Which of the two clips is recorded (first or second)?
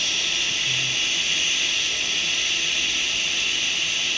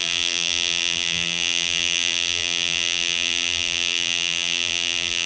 first